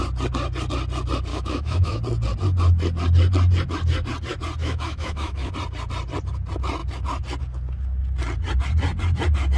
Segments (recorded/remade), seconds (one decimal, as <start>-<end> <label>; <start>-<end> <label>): 0.0-1.3 recorded; 1.3-2.0 remade; 2.0-4.6 recorded; 4.6-5.5 remade; 5.5-9.6 recorded